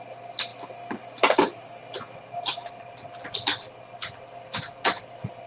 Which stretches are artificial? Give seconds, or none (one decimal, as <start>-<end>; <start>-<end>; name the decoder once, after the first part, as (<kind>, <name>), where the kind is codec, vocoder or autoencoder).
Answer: none